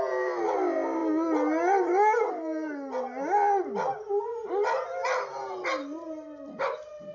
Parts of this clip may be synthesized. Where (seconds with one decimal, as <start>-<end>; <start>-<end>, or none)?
none